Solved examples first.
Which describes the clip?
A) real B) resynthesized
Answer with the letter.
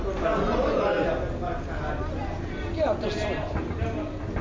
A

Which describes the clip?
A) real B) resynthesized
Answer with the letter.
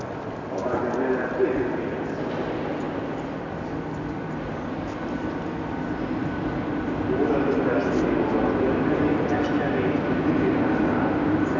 A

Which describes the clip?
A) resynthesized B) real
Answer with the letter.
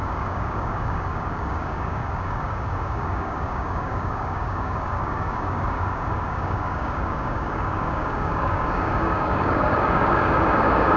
A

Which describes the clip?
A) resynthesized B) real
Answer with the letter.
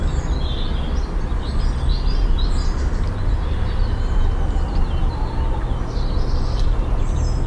B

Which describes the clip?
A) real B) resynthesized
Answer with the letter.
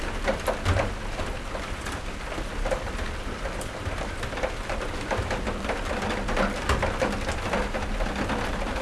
B